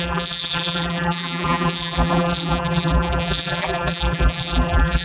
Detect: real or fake fake